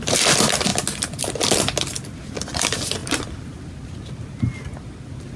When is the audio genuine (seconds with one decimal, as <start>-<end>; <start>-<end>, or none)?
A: 0.0-5.4